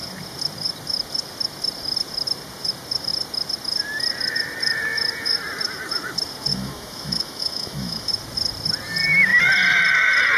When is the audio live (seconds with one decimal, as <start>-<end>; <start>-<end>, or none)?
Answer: 0.0-6.5; 8.1-10.4